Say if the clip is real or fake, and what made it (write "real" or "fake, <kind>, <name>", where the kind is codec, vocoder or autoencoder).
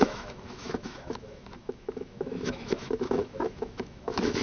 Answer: fake, autoencoder, DAC-VAE